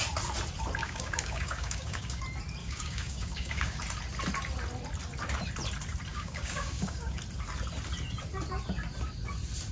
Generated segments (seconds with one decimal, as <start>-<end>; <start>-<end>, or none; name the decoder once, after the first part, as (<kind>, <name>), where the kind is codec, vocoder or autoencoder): 0.8-2.2 (codec, DAC); 2.6-3.8; 6.1-7.2